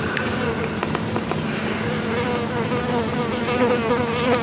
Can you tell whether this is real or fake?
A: real